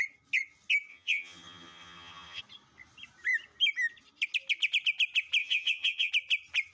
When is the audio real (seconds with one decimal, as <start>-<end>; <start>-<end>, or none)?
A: 0.0-0.9; 2.4-5.4; 6.1-6.7